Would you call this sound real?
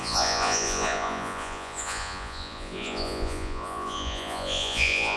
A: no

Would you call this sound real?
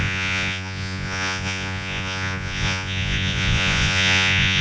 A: no